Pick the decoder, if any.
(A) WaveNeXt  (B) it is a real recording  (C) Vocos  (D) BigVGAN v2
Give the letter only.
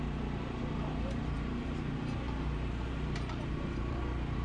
D